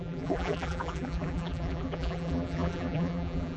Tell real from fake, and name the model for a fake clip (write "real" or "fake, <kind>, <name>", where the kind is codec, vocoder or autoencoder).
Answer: fake, vocoder, BigVGAN v2